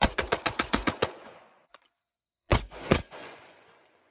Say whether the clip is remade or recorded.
remade